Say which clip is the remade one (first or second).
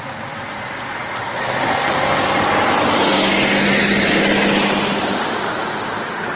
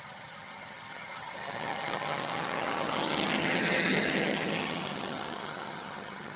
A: second